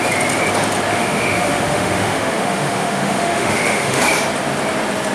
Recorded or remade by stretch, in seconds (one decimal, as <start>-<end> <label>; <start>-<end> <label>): 0.0-0.9 recorded; 0.9-4.0 remade; 4.0-5.1 recorded